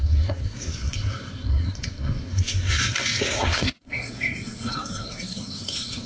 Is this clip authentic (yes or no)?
no